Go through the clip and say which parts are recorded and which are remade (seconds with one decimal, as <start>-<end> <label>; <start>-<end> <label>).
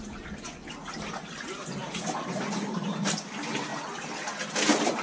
0.0-5.0 recorded